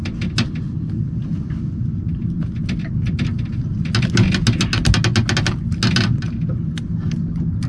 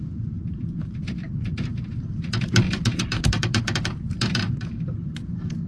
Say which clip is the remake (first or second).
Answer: second